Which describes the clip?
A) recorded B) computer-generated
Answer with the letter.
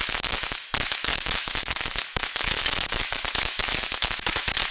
B